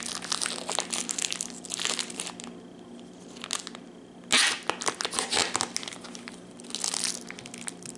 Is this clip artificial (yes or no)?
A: no